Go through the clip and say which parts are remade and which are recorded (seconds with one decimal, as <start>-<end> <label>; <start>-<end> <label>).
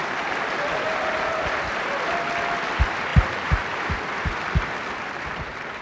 0.0-5.8 recorded